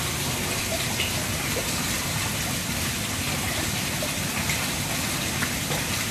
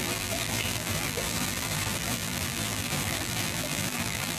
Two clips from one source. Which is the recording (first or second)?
first